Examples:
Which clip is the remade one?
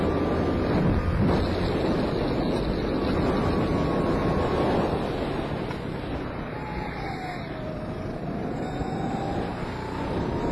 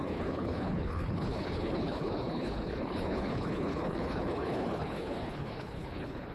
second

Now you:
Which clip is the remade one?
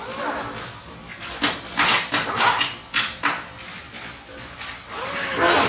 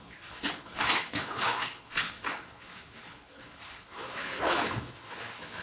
second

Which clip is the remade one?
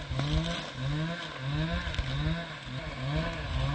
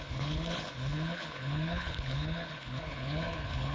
second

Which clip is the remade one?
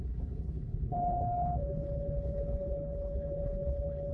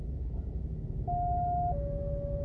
first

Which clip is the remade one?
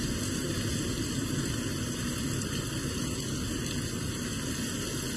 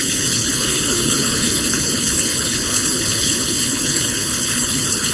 second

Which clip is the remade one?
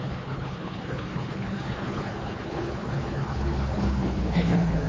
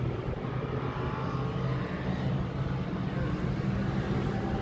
first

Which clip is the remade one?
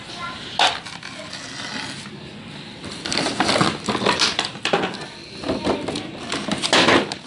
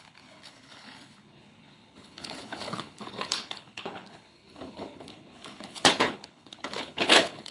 second